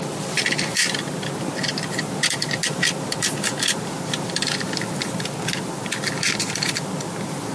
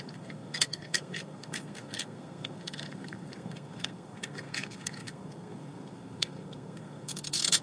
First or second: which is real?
first